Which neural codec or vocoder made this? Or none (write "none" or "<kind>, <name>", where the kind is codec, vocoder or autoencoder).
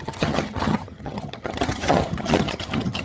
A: vocoder, HiFi-GAN